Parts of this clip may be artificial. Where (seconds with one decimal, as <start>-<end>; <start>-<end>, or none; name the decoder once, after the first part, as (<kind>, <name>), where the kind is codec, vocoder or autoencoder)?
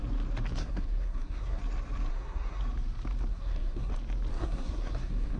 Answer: 0.6-1.6 (codec, SNAC); 2.1-2.6; 3.3-3.9; 4.3-5.4